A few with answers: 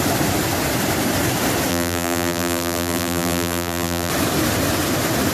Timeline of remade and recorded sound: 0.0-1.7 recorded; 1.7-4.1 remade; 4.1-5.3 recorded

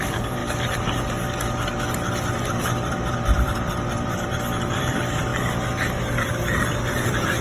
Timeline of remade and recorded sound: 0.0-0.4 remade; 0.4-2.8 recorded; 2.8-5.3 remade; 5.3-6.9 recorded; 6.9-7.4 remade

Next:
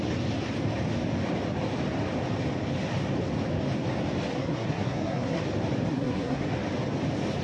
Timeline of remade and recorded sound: 0.0-4.3 recorded; 4.3-5.4 remade; 5.4-5.9 recorded; 5.9-6.5 remade; 6.5-7.4 recorded

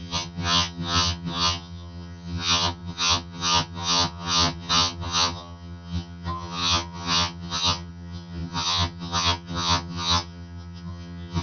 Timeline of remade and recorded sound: 0.0-11.4 remade

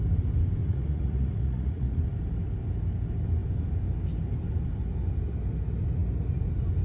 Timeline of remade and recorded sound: 0.0-0.6 recorded; 0.6-2.0 remade; 2.0-6.8 recorded